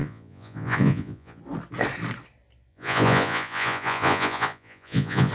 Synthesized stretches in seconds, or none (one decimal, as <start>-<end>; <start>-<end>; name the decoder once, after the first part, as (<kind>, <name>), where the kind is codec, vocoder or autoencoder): 0.0-1.4 (vocoder, Vocos); 2.7-5.3